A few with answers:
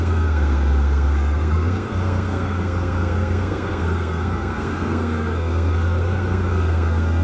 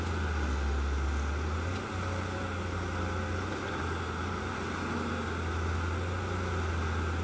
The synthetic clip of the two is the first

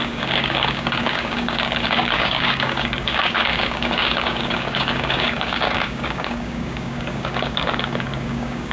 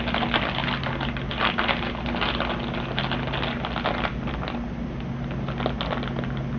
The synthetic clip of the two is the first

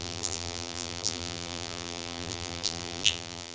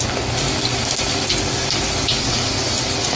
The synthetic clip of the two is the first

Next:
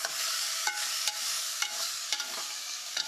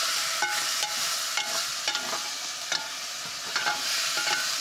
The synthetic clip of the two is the first